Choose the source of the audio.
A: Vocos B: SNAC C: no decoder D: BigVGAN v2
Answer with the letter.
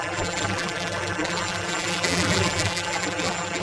D